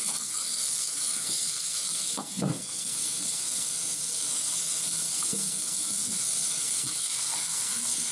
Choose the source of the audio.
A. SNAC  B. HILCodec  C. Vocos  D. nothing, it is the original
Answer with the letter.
A